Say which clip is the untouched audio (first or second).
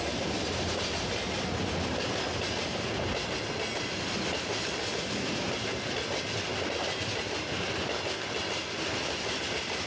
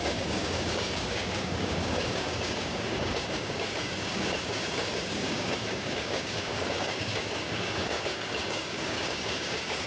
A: first